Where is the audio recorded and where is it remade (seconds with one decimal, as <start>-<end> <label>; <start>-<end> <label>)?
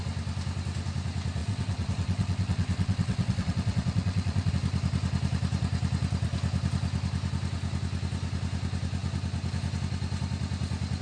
0.0-1.4 recorded; 1.4-4.5 remade; 4.5-11.0 recorded